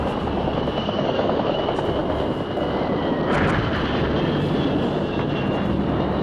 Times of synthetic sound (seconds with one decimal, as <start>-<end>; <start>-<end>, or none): 0.8-1.6